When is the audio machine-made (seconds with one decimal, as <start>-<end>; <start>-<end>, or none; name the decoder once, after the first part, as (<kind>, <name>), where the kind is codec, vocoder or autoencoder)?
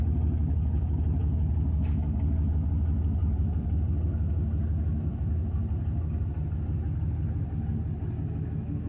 3.2-3.9 (vocoder, BigVGAN v2); 5.1-6.5